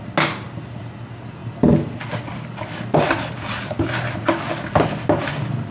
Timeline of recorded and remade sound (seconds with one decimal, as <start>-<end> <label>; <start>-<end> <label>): 0.0-5.7 recorded